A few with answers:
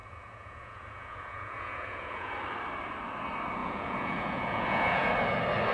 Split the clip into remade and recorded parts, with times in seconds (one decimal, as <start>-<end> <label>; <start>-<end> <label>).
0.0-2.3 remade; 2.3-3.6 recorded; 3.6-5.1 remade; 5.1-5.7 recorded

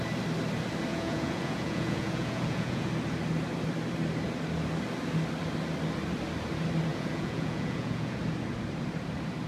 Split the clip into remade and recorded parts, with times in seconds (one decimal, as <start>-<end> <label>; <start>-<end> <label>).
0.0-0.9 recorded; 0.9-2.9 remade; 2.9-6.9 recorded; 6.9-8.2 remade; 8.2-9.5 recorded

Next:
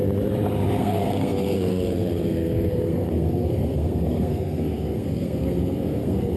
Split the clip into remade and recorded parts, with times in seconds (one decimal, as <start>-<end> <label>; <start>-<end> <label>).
0.0-0.8 recorded; 0.8-6.4 remade